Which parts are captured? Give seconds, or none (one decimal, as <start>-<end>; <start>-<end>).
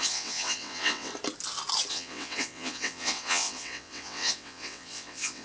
1.1-1.9